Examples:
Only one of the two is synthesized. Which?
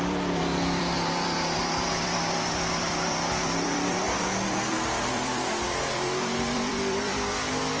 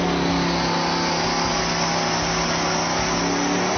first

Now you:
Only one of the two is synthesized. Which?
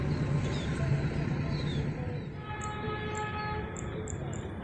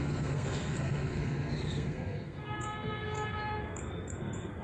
second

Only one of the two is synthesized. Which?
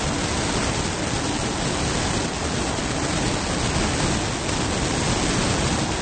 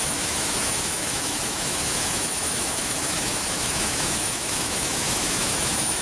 second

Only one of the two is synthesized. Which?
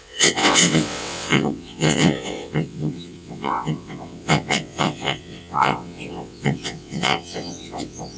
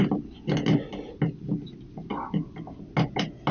first